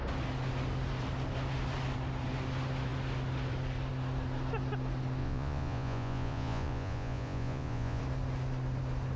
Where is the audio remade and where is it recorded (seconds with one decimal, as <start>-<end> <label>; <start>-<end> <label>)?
0.0-5.2 recorded; 5.2-8.0 remade; 8.0-9.2 recorded